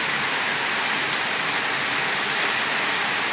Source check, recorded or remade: recorded